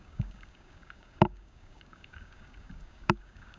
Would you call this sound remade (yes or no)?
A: yes